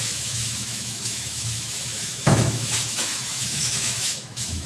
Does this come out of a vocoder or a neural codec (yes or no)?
yes